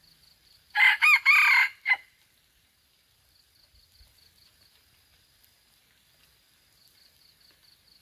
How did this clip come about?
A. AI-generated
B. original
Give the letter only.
B